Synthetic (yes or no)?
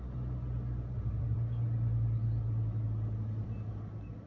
no